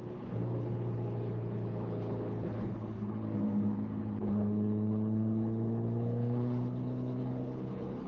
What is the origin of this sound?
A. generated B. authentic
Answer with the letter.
A